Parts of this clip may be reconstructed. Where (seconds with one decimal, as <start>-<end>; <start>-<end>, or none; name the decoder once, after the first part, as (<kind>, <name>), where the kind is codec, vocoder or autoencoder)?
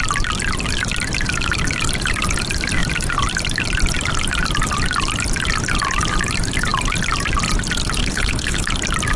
8.0-8.7 (codec, HILCodec)